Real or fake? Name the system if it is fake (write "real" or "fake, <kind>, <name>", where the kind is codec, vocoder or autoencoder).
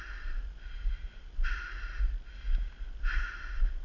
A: real